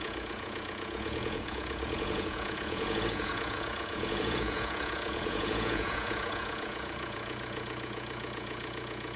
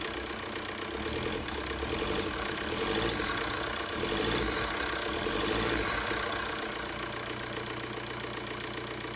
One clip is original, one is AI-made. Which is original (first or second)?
second